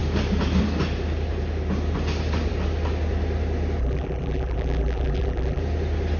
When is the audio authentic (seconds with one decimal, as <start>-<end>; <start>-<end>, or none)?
0.0-3.8; 5.6-6.2